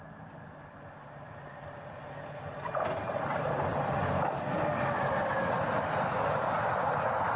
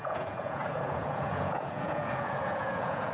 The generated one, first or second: second